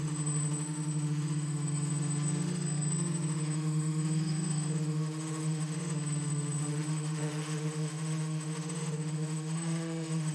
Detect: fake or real fake